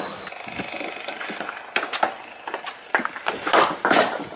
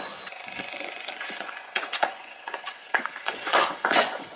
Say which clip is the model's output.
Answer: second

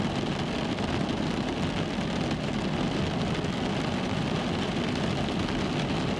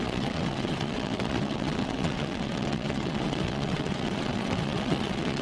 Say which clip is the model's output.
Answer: second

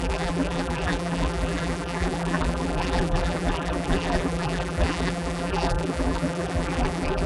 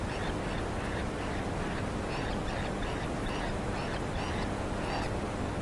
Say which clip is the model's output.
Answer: first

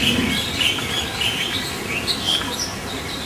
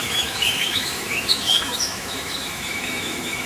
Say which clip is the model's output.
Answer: second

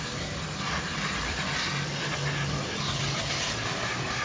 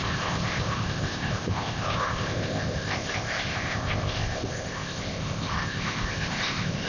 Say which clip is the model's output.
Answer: second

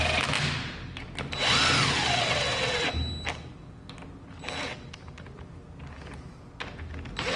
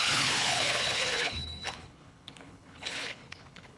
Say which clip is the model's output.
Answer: second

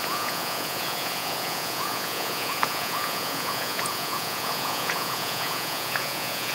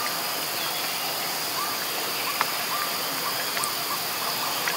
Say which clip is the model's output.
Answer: first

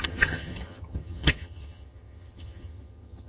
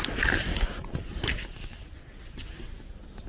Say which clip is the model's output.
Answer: first